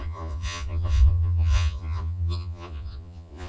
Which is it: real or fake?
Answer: fake